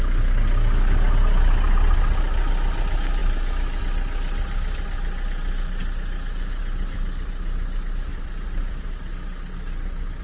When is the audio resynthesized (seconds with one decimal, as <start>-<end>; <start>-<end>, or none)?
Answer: 8.1-8.9